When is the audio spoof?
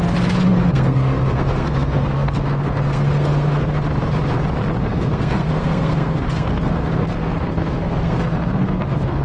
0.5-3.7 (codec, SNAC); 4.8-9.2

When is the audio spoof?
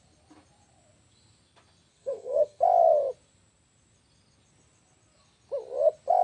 1.9-2.6 (codec, SNAC)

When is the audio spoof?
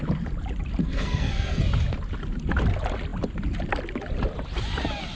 0.8-1.6 (codec, SNAC)